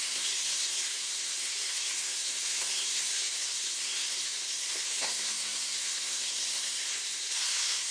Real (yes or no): no